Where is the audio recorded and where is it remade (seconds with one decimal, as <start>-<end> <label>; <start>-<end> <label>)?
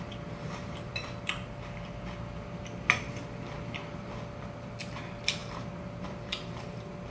0.0-7.1 recorded